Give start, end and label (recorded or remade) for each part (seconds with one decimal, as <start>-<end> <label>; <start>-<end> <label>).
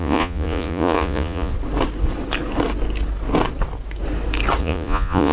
0.0-1.5 remade; 1.5-4.6 recorded; 4.6-5.3 remade